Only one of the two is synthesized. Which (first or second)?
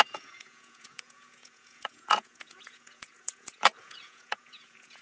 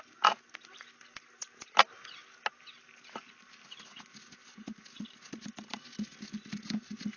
first